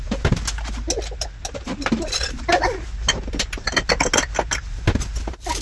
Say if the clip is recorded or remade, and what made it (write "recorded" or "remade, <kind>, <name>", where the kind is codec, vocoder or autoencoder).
recorded